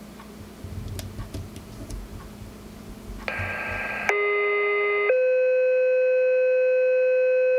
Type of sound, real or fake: real